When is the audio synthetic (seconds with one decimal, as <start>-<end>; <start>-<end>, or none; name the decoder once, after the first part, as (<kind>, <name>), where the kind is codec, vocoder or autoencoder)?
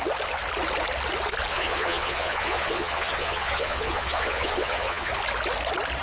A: 1.5-5.1 (vocoder, Vocos)